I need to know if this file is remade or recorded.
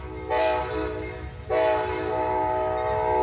recorded